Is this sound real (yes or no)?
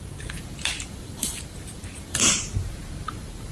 no